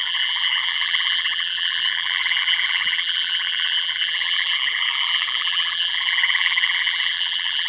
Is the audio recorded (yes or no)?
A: no